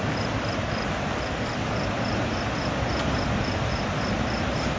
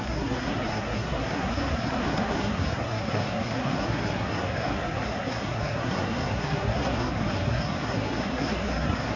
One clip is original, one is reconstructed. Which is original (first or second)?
first